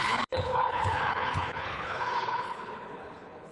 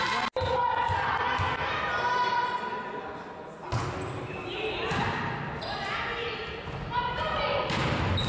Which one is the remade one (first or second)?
first